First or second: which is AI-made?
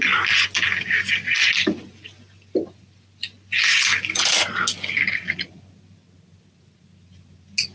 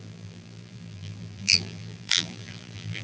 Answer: second